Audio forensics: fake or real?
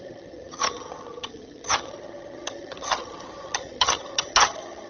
fake